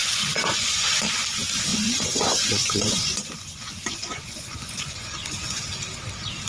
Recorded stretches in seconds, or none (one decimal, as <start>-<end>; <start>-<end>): 1.0-1.7; 5.6-6.5